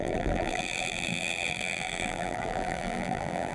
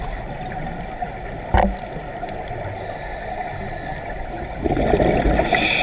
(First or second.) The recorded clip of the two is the second